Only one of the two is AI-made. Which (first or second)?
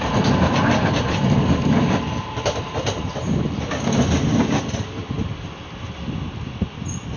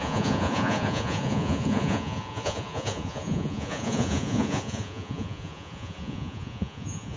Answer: second